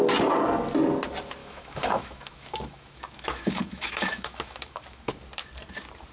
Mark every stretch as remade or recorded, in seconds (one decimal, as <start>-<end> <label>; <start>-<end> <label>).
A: 0.0-1.4 recorded; 1.4-5.1 remade; 5.1-6.1 recorded